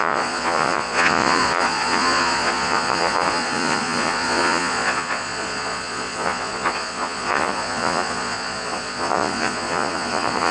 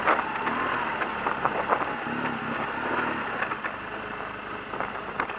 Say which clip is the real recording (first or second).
second